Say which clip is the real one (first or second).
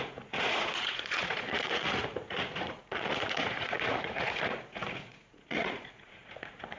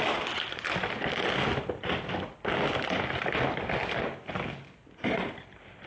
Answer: second